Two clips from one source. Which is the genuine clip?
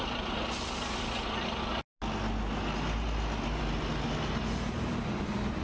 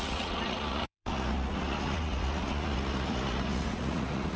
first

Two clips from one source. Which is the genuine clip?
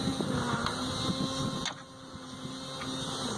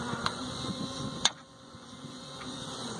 first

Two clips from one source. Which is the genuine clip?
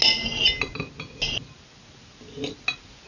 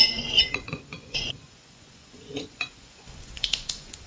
first